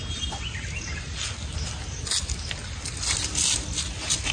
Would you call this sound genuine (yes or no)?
yes